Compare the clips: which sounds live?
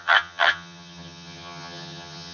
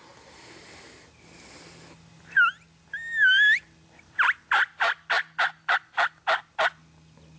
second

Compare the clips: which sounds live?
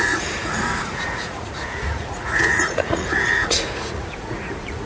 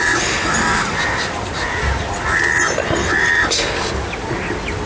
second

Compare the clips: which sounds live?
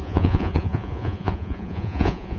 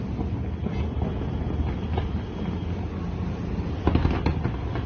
second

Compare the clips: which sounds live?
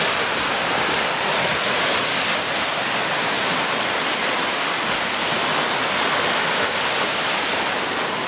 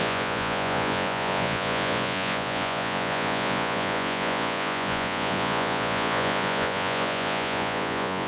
first